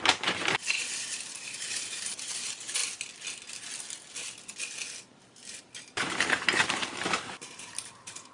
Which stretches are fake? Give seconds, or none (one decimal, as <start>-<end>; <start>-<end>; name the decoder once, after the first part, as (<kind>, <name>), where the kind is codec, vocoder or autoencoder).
0.0-2.8 (vocoder, BigVGAN v2); 5.6-8.3